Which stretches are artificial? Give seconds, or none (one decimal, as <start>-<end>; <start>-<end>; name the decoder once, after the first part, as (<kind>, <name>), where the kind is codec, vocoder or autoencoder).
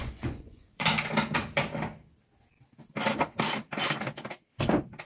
0.0-0.9 (vocoder, Vocos)